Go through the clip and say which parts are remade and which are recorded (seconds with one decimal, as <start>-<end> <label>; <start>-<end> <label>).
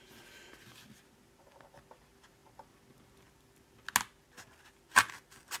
0.0-5.6 recorded